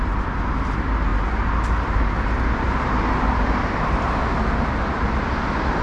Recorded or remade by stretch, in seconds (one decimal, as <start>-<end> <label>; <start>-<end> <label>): 0.0-4.2 remade; 4.2-4.8 recorded; 4.8-5.8 remade